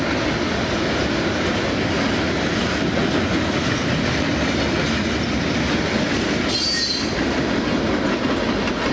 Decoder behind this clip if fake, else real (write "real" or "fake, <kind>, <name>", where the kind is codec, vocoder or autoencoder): real